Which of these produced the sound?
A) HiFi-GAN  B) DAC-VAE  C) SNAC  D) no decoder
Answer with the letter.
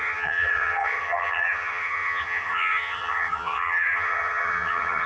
A